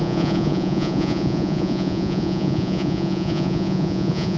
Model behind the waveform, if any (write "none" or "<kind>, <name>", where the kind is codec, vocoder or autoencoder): vocoder, Vocos